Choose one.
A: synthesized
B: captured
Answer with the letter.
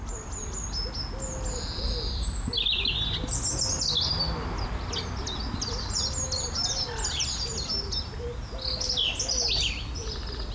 B